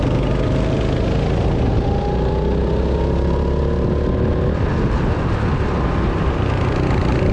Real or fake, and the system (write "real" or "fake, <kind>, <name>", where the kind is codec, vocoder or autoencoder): real